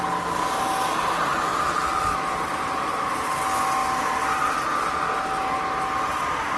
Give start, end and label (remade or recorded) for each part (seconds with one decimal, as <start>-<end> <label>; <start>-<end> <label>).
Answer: 0.0-6.6 recorded